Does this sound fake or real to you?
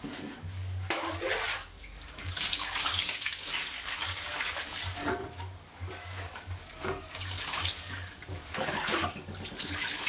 fake